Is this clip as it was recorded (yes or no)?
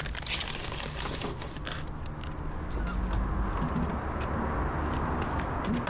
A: yes